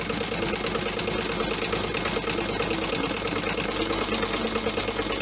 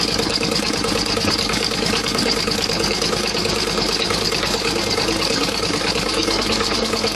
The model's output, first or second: second